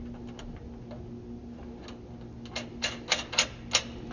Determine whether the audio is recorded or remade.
recorded